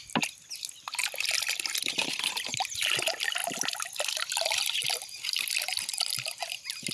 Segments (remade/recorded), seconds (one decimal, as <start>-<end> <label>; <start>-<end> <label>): 0.0-1.0 recorded; 1.0-1.9 remade; 1.9-6.9 recorded